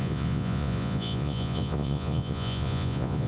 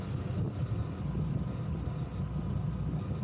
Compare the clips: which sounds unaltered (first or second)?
second